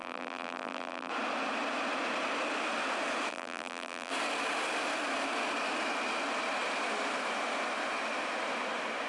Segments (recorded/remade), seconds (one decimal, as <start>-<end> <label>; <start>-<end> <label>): 0.0-1.1 remade; 1.1-3.3 recorded; 3.3-4.1 remade; 4.1-9.1 recorded